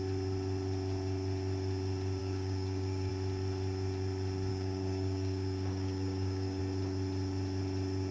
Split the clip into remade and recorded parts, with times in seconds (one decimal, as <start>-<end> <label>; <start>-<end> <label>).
0.0-2.2 recorded; 2.2-3.1 remade; 3.1-4.5 recorded; 4.5-6.6 remade; 6.6-8.1 recorded